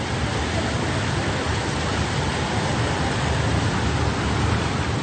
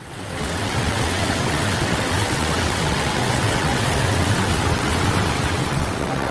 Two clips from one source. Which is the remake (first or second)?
second